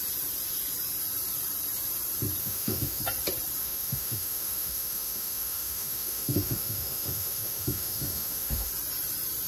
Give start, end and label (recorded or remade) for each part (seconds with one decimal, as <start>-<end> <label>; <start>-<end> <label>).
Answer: 0.0-2.4 recorded; 2.4-3.0 remade; 3.0-3.6 recorded; 3.6-8.7 remade; 8.7-9.5 recorded